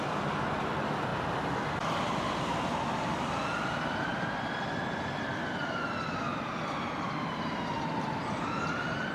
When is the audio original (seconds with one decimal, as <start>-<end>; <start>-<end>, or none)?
0.0-9.1

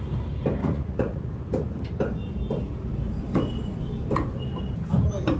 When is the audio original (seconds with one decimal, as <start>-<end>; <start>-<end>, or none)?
0.0-0.6; 1.3-5.4